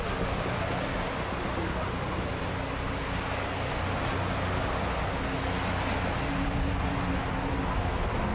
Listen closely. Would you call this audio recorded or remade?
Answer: recorded